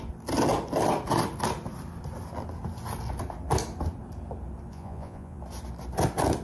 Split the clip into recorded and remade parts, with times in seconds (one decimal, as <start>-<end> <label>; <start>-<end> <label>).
0.0-4.7 recorded; 4.7-5.4 remade; 5.4-6.4 recorded